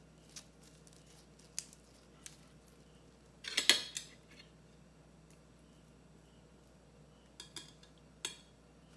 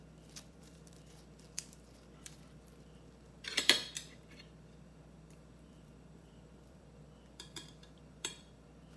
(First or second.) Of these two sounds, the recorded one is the first